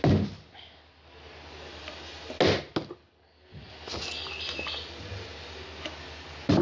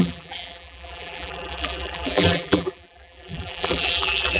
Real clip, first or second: first